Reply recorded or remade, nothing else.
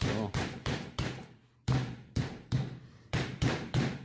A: remade